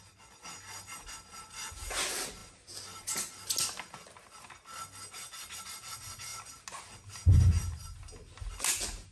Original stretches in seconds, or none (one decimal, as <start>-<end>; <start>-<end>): 0.0-9.1